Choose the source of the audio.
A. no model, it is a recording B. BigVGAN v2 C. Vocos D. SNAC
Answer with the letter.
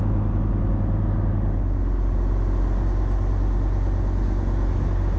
A